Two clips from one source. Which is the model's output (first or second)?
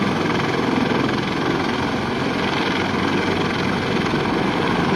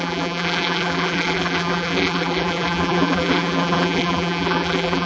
second